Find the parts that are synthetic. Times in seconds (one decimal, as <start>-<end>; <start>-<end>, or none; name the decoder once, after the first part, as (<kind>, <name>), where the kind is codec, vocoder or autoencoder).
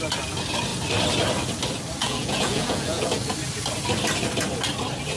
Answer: 2.0-3.2 (vocoder, Vocos)